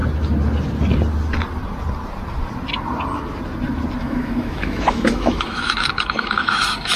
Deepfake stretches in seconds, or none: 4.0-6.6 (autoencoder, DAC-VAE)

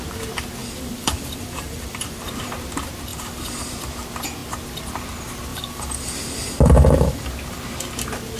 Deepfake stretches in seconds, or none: 0.6-2.3 (vocoder, BigVGAN v2); 3.1-3.7; 5.5-7.3

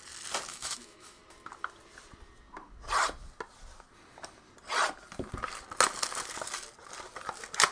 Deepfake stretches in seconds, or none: 0.5-1.2 (autoencoder, DAC-VAE)

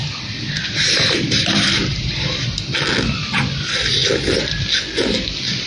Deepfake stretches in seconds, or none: 0.0-2.6 (vocoder, BigVGAN v2)

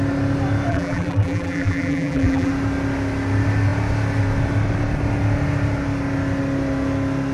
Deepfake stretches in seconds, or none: 0.7-2.5 (vocoder, BigVGAN v2)

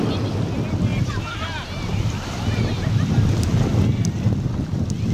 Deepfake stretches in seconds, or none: 0.9-4.0 (vocoder, BigVGAN v2)

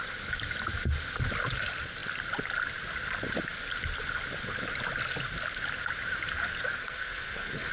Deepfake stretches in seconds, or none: 6.8-7.7 (codec, SNAC)